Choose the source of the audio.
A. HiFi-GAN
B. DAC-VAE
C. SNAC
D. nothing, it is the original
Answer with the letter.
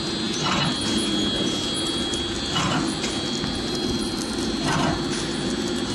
D